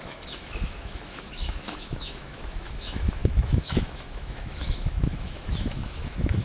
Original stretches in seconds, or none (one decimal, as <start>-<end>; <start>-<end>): none